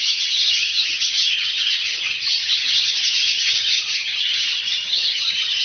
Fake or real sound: fake